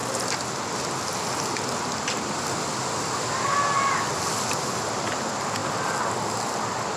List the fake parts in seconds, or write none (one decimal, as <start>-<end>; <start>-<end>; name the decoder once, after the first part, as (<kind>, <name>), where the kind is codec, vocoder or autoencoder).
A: none